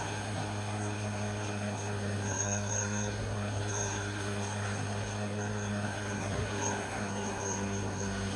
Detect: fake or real fake